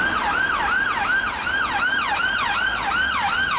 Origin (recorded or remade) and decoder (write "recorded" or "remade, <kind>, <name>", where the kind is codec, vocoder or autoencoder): recorded